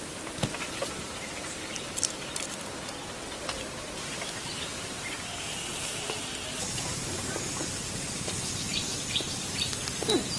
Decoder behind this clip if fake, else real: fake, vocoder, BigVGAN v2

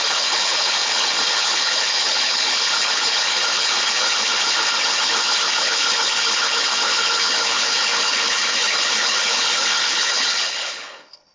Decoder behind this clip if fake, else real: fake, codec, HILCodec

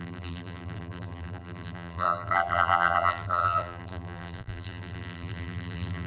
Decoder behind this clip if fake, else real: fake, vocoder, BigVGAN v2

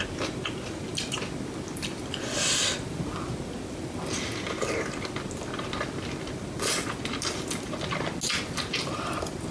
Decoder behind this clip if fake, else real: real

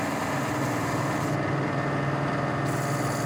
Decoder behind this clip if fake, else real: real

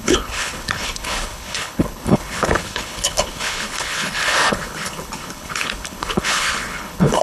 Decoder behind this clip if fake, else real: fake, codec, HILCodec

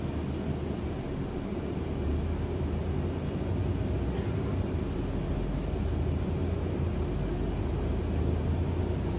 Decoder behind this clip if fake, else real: real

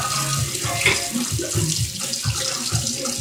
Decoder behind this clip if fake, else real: real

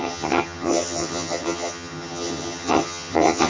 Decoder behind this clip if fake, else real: fake, vocoder, HiFi-GAN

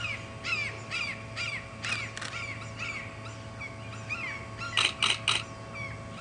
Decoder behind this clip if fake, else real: real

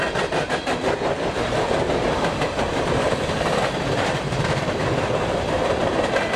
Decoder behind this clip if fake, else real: fake, vocoder, BigVGAN v2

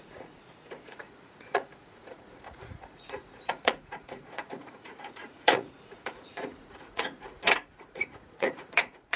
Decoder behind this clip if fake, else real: fake, vocoder, Vocos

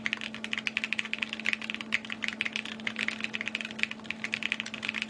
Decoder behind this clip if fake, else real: real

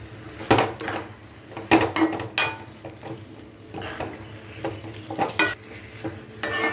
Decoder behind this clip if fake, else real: real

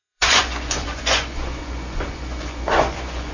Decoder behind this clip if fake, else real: fake, vocoder, Vocos